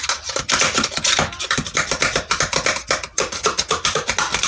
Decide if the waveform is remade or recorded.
recorded